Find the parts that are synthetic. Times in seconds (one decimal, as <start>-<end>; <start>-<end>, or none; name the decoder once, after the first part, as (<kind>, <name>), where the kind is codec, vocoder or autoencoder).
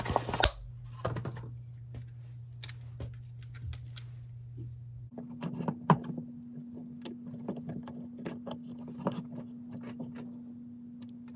none